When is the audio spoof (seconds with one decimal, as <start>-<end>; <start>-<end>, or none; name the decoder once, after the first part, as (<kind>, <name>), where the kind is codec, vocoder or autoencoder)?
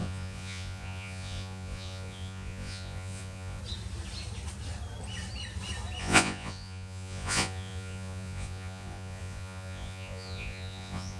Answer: 0.0-3.6 (vocoder, Vocos); 6.0-11.2